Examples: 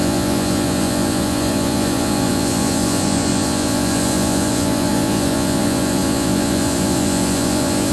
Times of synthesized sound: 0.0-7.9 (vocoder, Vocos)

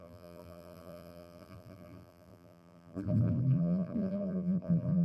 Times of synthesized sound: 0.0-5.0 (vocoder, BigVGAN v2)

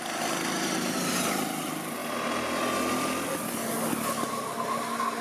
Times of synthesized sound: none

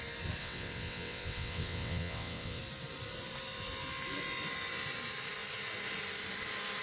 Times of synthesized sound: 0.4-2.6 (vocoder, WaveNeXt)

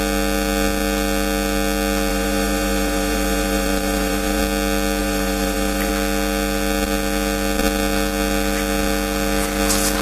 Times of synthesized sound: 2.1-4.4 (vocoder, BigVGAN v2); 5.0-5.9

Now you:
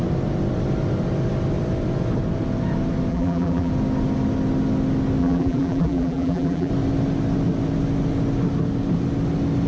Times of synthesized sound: 3.1-3.7 (vocoder, BigVGAN v2); 5.2-6.7

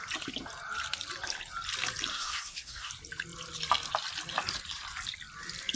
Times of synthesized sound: 2.1-2.9 (codec, SNAC)

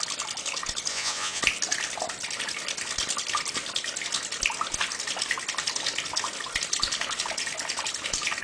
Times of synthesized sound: 0.9-1.4 (vocoder, Vocos)